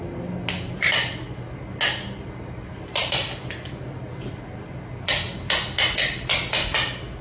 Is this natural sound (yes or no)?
yes